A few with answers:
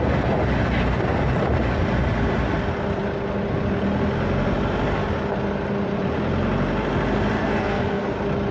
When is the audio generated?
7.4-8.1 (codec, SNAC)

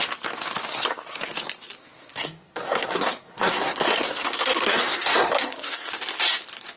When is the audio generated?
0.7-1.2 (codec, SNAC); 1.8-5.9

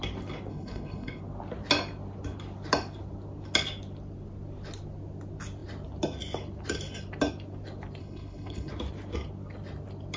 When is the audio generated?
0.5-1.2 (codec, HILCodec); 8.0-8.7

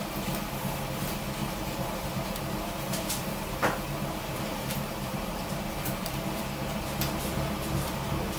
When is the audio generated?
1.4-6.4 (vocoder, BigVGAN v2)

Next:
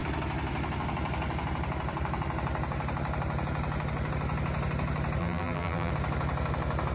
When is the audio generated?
5.2-5.9 (vocoder, BigVGAN v2)

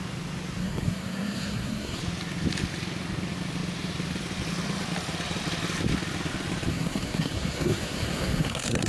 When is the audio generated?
0.6-2.0 (codec, SNAC); 6.7-8.9